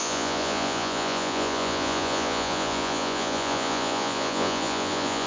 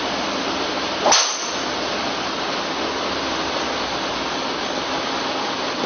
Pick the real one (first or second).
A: second